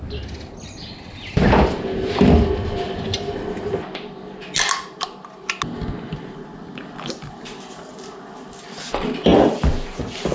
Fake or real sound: real